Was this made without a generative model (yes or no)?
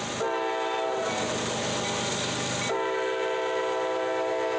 yes